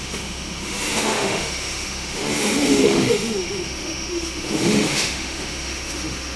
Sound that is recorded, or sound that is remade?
remade